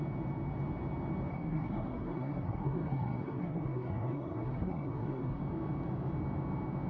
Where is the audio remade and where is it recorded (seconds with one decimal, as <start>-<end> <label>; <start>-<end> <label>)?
0.0-1.3 recorded; 1.3-5.4 remade; 5.4-6.9 recorded